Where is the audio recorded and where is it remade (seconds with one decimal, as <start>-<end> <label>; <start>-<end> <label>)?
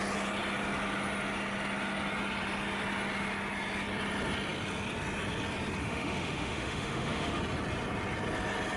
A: 0.0-5.8 recorded; 5.8-7.4 remade; 7.4-8.8 recorded